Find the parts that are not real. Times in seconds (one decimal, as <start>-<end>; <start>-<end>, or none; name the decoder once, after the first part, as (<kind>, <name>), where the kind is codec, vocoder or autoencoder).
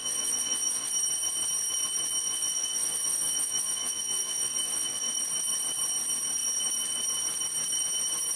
0.0-0.9 (vocoder, Vocos); 2.2-5.1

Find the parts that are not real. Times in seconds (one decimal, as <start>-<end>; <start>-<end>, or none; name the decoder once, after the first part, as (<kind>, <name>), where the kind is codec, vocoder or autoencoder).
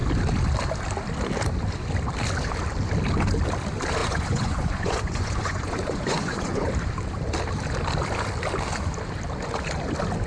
4.0-6.7 (vocoder, Vocos)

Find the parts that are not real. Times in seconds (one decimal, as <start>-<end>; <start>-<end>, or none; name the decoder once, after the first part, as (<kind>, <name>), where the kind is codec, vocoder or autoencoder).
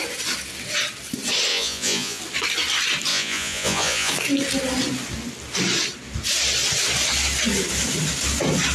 1.5-2.2 (vocoder, Vocos); 3.1-4.1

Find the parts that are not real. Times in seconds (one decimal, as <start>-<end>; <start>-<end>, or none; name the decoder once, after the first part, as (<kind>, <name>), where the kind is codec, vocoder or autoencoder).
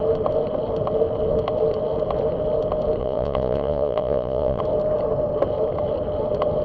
3.0-4.6 (vocoder, Vocos)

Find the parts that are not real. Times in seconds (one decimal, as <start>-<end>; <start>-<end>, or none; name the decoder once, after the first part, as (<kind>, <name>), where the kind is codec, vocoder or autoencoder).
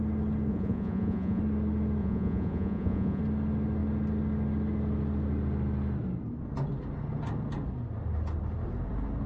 0.5-1.4 (vocoder, Vocos); 2.0-3.2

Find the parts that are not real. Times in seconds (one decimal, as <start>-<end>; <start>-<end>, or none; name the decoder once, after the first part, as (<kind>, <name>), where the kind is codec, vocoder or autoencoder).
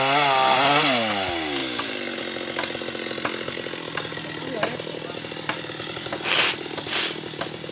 none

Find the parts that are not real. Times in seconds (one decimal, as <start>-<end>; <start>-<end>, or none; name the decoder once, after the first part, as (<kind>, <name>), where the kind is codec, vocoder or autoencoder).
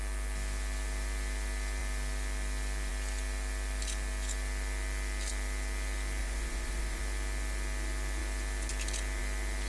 6.2-7.0 (vocoder, Vocos)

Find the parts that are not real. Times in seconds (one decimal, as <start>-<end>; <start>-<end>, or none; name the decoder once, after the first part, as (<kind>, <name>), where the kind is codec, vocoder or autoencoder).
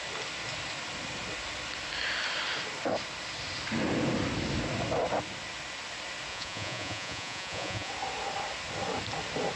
6.3-7.9 (vocoder, Vocos)